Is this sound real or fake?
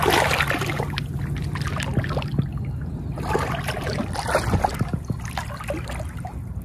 real